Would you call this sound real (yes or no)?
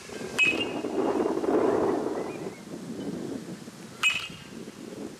yes